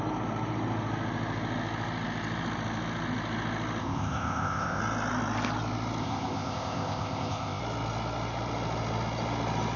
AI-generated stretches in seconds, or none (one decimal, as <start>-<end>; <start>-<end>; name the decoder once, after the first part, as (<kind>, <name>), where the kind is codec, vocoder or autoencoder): 3.8-4.8 (codec, ZipCodec); 6.0-7.6